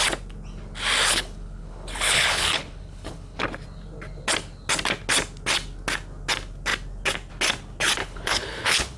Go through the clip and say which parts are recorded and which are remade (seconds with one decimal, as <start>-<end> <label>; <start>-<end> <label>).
0.0-1.1 recorded; 1.1-3.4 remade; 3.4-8.0 recorded; 8.0-9.0 remade